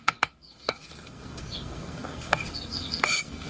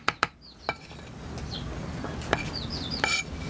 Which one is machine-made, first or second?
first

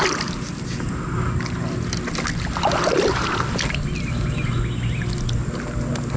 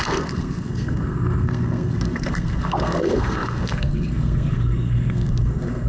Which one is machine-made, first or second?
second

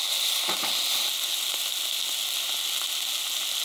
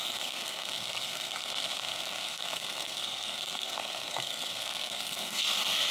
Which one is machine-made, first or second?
second